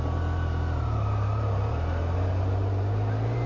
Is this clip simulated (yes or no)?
no